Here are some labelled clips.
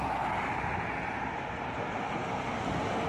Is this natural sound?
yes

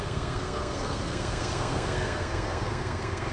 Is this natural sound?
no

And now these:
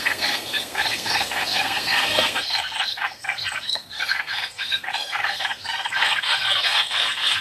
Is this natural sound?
no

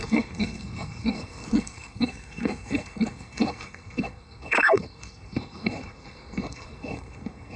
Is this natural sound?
no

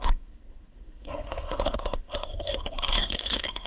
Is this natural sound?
no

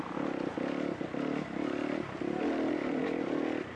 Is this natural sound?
yes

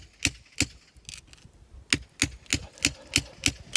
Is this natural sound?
yes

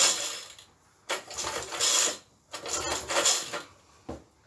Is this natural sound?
yes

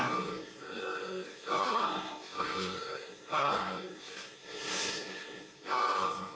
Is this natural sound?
no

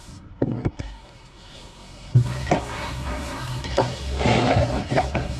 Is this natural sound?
no